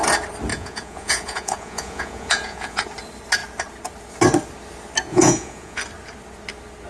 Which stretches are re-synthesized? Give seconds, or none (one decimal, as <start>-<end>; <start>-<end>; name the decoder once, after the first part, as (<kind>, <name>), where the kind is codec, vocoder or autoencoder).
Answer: 0.5-2.8 (vocoder, Vocos); 5.1-5.8